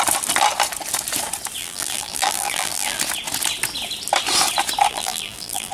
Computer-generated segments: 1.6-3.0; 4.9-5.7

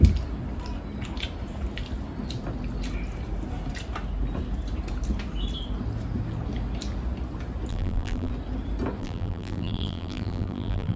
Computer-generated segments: 7.7-8.3; 9.0-11.0

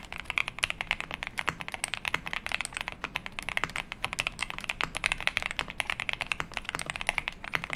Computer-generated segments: none

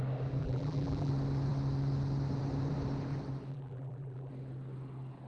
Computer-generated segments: 0.4-1.1; 3.5-4.3

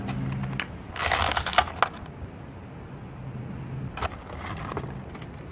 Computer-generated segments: 1.0-1.5